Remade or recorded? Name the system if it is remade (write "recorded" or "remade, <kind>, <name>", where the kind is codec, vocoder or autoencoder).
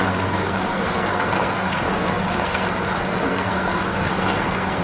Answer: remade, codec, SNAC